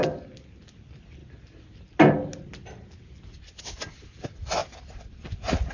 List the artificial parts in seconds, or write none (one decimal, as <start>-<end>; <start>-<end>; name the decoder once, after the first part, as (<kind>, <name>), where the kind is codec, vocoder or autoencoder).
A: 4.6-5.7 (vocoder, BigVGAN v2)